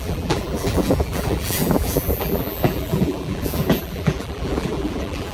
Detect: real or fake fake